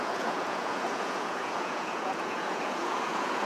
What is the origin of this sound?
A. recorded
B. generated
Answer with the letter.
B